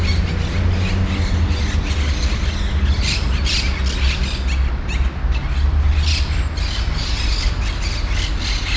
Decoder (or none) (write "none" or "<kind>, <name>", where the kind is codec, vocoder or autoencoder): none